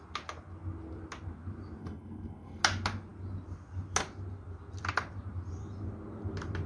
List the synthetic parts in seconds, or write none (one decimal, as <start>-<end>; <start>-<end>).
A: 1.8-2.6